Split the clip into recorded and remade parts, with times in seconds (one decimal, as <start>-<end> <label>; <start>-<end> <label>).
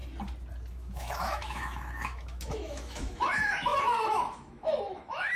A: 0.0-0.7 recorded; 0.7-5.4 remade